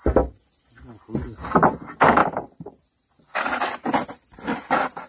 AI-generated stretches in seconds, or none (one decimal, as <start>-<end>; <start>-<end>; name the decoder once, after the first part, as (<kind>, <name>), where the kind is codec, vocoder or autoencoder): none